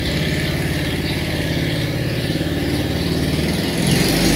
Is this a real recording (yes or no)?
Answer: yes